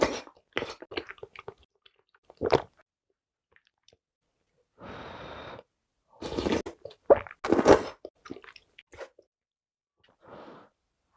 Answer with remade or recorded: recorded